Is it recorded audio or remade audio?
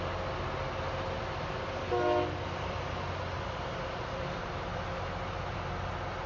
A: recorded